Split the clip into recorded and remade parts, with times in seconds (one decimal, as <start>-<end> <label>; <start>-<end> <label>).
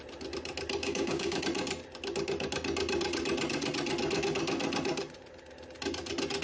0.0-0.8 recorded; 0.8-1.4 remade; 1.4-6.4 recorded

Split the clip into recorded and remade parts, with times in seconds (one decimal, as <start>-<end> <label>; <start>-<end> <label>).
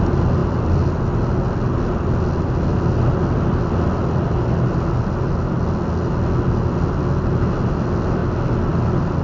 0.0-9.2 recorded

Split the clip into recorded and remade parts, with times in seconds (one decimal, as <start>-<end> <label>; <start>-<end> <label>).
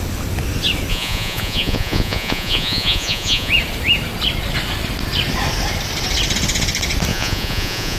0.0-0.9 recorded; 0.9-3.5 remade; 3.5-7.1 recorded; 7.1-8.0 remade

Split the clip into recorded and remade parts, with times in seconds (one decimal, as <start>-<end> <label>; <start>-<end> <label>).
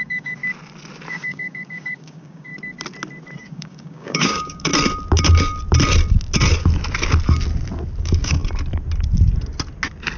0.0-0.4 remade; 0.4-1.1 recorded; 1.1-2.5 remade; 2.5-3.4 recorded; 3.4-4.7 remade; 4.7-8.0 recorded; 8.0-8.4 remade; 8.4-10.2 recorded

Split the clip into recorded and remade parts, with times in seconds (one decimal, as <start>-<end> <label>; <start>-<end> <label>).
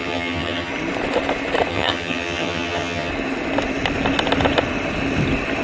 0.0-0.7 remade; 0.7-1.7 recorded; 1.7-3.1 remade; 3.1-5.6 recorded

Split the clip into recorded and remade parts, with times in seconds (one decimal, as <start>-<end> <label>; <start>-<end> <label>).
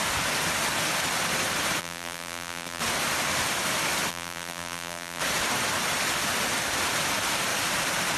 0.0-1.8 recorded; 1.8-2.8 remade; 2.8-4.1 recorded; 4.1-5.2 remade; 5.2-8.2 recorded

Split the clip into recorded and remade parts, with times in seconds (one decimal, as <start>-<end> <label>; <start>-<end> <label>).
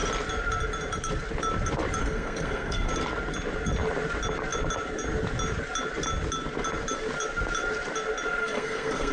0.0-2.0 recorded; 2.0-2.9 remade; 2.9-8.4 recorded; 8.4-9.1 remade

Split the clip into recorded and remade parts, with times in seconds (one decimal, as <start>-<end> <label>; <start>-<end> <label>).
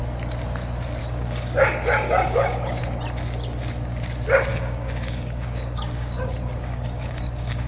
0.0-1.0 recorded; 1.0-2.8 remade; 2.8-4.5 recorded; 4.5-7.7 remade